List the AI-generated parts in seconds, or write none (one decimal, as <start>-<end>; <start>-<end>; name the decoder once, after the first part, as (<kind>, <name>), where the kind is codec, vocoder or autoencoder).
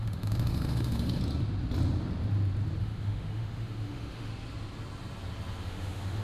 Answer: 0.0-1.2 (autoencoder, DAC-VAE); 2.8-4.3; 5.6-6.2